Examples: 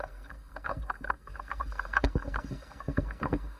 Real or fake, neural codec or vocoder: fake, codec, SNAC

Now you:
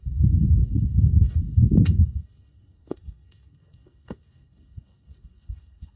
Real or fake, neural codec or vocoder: fake, codec, SNAC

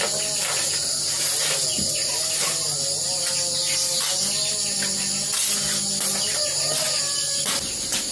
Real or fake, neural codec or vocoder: real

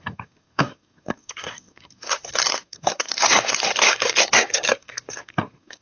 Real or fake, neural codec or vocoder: fake, codec, SNAC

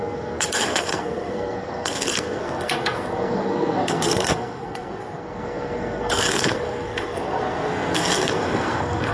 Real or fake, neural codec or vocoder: fake, codec, SNAC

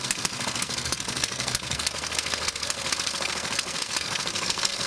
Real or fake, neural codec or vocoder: fake, codec, SNAC